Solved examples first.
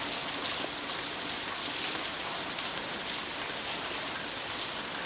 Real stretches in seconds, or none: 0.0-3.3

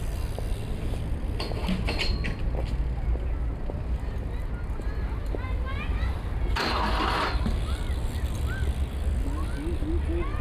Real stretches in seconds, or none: 0.0-10.4

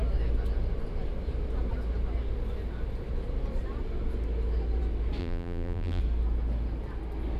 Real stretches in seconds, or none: 0.0-5.2; 6.0-7.4